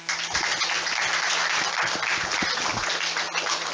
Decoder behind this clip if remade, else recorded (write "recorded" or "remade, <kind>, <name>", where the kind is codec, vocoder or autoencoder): recorded